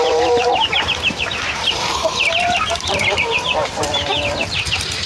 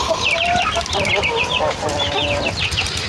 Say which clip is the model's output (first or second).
first